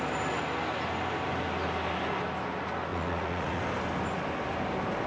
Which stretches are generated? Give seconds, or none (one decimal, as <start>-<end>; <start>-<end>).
2.9-3.6